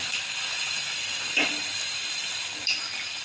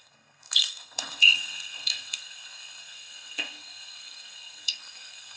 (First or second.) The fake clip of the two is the second